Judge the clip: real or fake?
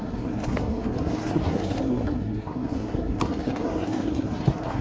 fake